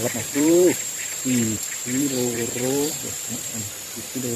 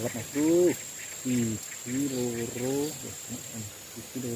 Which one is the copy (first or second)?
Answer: first